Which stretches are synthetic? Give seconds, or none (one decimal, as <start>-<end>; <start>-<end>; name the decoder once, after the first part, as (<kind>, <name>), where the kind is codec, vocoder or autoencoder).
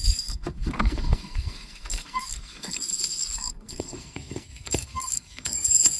0.0-6.0 (codec, SNAC)